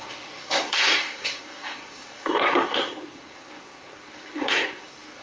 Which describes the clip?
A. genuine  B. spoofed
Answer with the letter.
B